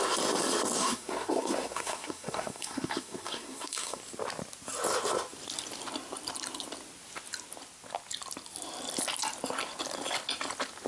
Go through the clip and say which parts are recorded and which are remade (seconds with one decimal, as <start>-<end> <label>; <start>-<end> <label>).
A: 0.0-0.8 recorded; 0.8-4.0 remade; 4.0-10.9 recorded